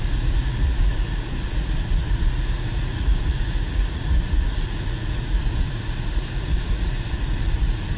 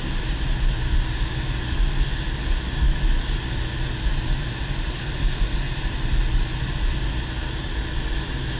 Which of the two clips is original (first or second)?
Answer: second